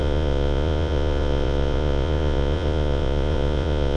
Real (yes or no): no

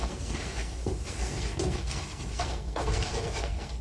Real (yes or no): no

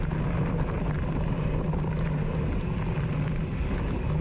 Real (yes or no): yes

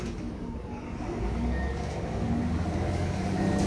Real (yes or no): no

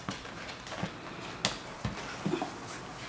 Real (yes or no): yes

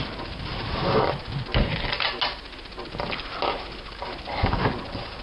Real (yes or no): yes